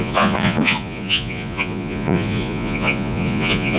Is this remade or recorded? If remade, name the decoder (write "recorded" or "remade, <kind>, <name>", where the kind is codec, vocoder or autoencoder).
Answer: remade, vocoder, Vocos